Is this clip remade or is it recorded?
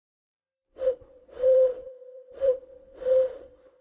remade